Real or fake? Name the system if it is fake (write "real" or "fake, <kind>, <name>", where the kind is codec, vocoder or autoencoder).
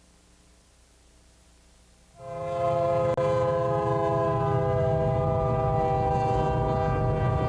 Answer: real